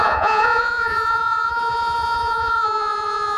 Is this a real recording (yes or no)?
no